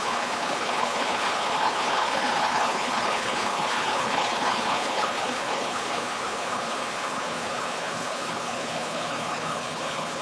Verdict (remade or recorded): remade